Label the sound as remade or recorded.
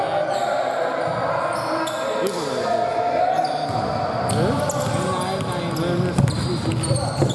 recorded